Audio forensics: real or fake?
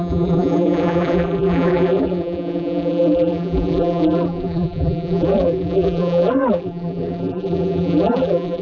fake